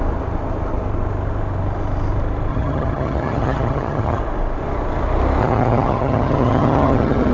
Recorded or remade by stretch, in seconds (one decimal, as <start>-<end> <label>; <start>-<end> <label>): 0.0-2.5 recorded; 2.5-4.2 remade; 4.2-5.4 recorded; 5.4-7.3 remade